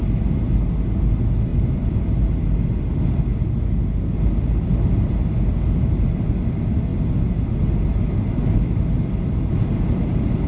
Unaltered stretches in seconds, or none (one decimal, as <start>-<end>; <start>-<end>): 0.0-10.5